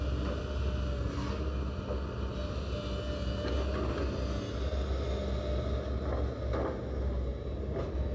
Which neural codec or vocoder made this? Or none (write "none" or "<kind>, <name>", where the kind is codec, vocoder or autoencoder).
none